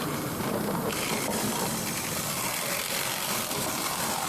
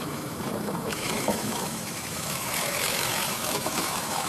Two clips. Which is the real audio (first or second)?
first